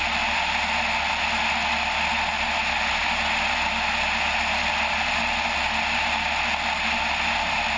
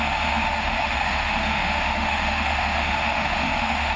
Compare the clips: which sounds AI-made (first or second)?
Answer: second